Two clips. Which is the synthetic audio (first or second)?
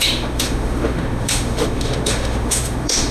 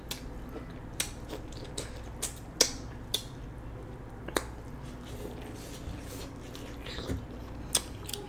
first